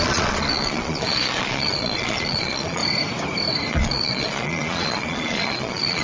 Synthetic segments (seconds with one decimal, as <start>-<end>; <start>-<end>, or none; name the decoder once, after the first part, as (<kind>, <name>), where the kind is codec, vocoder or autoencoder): 0.0-2.8 (vocoder, Vocos); 3.7-6.0